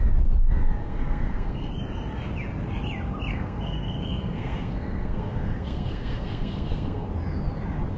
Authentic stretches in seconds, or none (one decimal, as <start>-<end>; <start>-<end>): 0.0-0.8; 1.7-3.3; 7.1-8.0

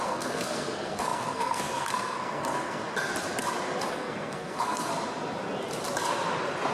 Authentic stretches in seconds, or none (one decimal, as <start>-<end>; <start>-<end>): 2.8-3.9; 4.9-6.7

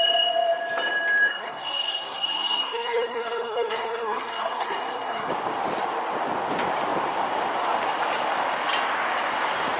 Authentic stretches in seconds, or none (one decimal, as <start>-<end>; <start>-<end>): 0.0-1.3; 5.3-9.8

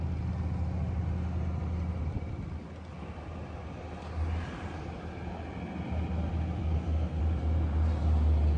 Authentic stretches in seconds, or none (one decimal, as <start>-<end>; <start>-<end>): 0.0-6.6; 7.2-8.6

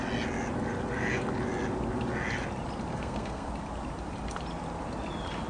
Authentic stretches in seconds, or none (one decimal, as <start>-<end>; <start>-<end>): 0.0-2.9; 3.5-5.5

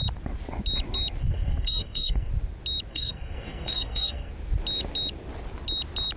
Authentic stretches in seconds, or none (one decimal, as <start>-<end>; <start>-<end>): 0.0-1.2; 2.3-2.9; 4.3-6.2